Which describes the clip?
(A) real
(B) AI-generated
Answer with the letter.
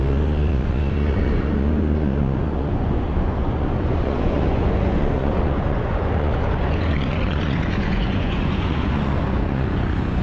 B